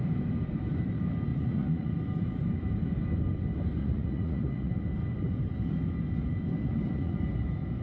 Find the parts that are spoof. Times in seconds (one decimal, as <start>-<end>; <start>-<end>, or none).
1.3-1.9; 3.8-4.7; 6.6-7.2